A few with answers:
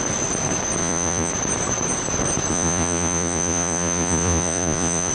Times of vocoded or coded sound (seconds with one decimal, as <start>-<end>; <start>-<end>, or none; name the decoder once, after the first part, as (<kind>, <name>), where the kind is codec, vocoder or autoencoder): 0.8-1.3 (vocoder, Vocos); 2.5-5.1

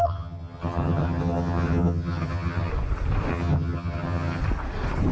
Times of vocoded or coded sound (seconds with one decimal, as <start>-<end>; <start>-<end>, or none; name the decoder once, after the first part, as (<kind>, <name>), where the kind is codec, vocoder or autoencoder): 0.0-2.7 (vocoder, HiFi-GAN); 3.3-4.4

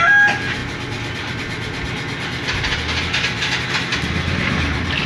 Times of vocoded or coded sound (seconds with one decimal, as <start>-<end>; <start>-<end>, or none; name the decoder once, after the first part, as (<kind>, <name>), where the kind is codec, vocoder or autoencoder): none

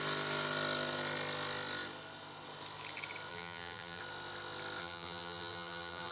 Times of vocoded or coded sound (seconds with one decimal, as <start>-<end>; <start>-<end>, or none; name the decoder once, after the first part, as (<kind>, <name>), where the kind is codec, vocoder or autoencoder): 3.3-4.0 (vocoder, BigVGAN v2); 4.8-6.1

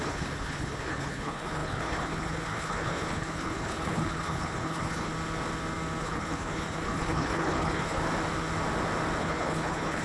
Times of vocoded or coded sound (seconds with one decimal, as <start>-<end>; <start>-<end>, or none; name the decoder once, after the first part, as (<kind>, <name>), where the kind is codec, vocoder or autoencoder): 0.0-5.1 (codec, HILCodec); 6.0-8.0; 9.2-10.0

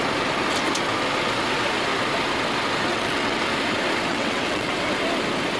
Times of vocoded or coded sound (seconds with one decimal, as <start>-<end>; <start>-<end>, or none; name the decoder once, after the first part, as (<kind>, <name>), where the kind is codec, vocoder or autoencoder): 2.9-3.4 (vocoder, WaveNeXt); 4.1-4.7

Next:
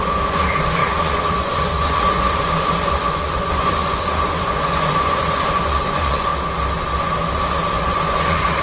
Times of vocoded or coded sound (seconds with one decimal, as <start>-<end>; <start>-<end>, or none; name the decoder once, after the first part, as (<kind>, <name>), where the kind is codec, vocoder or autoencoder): 0.0-6.3 (vocoder, Vocos); 7.7-8.6